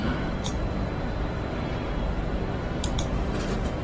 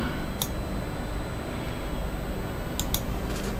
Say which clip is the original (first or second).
second